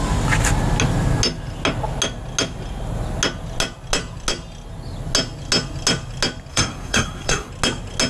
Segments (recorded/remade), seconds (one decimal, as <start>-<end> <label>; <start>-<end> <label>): 0.0-6.5 recorded; 6.5-7.5 remade; 7.5-8.1 recorded